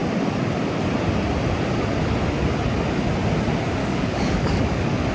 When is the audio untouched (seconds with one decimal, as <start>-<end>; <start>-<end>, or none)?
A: 0.0-3.8